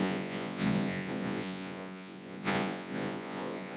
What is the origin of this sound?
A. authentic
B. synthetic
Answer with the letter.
B